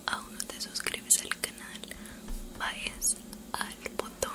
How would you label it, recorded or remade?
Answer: recorded